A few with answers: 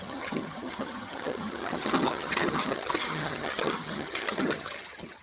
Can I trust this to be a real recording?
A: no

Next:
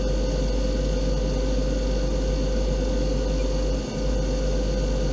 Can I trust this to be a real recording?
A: yes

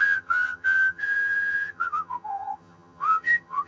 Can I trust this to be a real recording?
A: no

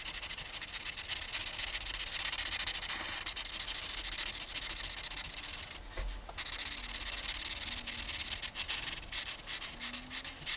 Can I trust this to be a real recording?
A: yes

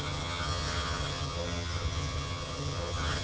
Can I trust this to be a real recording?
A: no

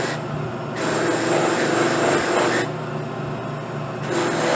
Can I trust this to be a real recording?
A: yes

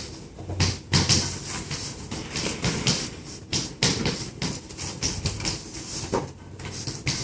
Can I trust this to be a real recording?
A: yes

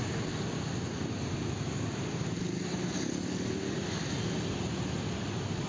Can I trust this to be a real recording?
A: yes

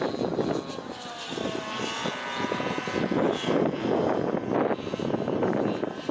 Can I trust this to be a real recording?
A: yes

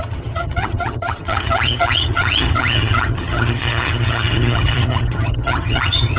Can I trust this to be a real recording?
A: no